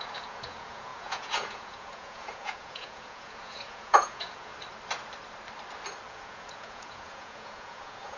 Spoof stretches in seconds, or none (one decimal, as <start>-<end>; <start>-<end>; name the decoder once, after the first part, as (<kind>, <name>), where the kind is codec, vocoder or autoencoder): 0.0-4.5 (vocoder, Vocos); 6.1-8.2